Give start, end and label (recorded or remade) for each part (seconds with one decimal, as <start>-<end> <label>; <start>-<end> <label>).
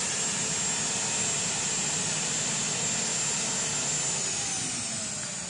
0.0-5.5 recorded